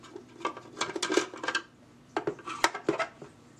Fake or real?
real